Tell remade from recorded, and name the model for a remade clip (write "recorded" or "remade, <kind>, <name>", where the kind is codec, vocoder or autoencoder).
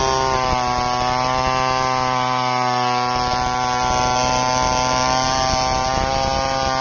recorded